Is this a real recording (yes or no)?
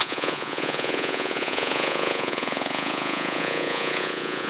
no